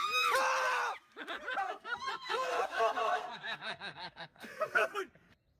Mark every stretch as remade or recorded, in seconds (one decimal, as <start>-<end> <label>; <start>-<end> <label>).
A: 0.0-1.6 recorded; 1.6-5.0 remade; 5.0-5.6 recorded